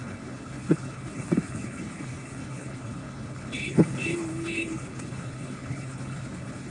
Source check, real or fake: fake